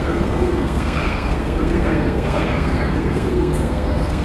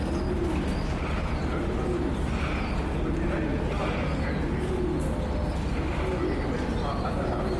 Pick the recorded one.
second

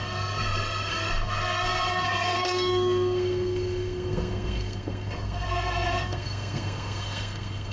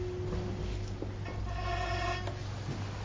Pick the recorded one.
second